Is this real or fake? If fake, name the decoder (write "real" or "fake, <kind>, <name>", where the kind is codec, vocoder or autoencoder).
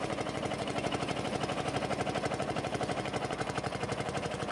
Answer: fake, vocoder, Vocos